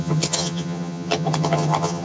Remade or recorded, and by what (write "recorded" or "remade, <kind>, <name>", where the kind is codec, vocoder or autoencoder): remade, vocoder, HiFi-GAN